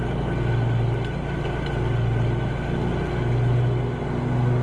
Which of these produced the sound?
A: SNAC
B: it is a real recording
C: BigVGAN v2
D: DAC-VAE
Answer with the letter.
B